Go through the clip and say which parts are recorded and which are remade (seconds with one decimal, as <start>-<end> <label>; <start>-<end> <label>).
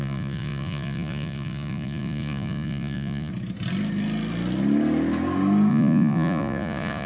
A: 0.0-3.3 remade; 3.3-5.7 recorded; 5.7-7.1 remade